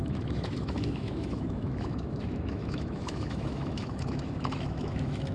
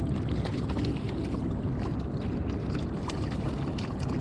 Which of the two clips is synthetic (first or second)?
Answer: first